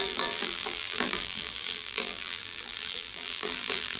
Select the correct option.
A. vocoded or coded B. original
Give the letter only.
A